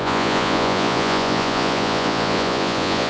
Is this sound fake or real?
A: fake